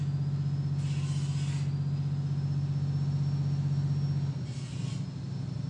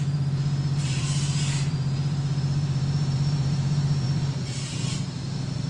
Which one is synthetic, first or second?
second